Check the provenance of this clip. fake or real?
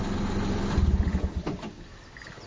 real